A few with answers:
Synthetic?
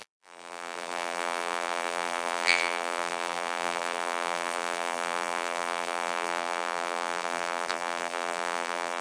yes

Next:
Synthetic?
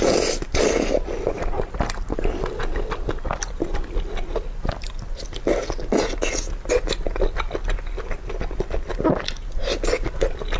no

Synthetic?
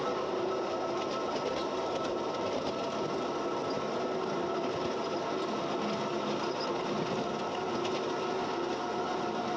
no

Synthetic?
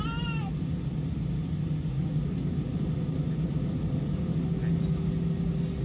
no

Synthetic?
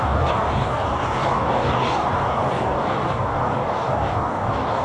yes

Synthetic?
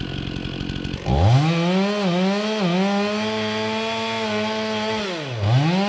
no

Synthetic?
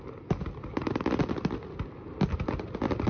no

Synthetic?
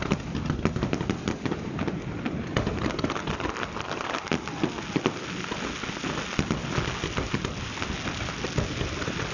no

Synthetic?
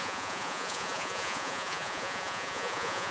yes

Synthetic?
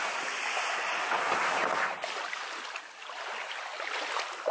no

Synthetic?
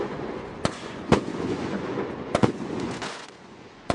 yes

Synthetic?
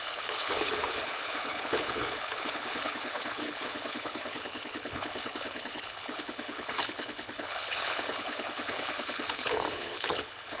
yes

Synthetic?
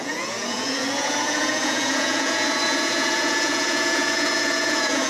yes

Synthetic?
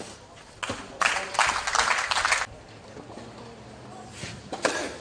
no